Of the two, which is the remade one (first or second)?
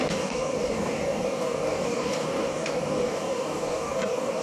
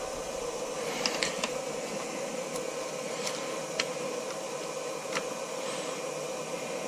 first